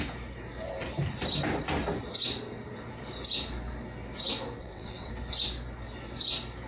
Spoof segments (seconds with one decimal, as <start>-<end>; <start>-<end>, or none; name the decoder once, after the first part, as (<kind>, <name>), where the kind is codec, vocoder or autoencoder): 4.6-5.1 (vocoder, WaveNeXt)